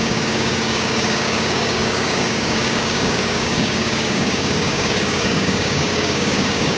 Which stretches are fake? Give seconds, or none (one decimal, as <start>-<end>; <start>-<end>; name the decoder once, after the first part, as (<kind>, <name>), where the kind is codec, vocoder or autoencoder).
0.0-6.8 (codec, DAC)